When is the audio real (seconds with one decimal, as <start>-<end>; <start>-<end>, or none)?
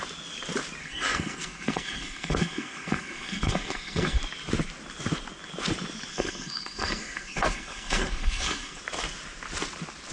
0.0-0.8; 4.2-6.1; 8.8-10.1